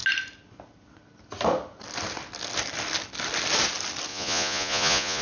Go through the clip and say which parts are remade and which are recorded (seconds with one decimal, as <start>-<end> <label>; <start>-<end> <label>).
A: 0.0-4.1 recorded; 4.1-5.2 remade